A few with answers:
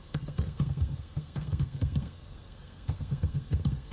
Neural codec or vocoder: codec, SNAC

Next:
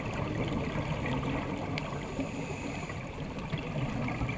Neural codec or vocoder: none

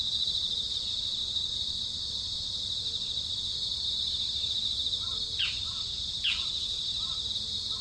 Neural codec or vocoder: none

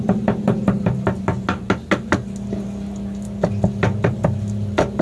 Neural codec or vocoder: none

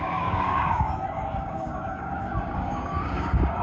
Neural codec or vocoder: codec, DAC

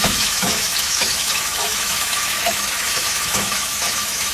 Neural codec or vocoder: autoencoder, DAC-VAE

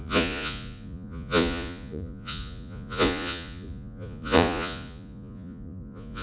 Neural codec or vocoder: vocoder, Vocos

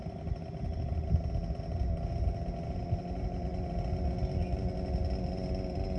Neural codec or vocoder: none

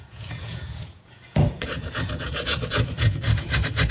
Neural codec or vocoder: vocoder, Vocos